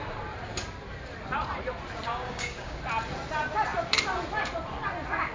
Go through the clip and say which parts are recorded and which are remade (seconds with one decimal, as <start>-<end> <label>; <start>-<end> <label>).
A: 0.0-2.1 recorded; 2.1-2.8 remade; 2.8-5.3 recorded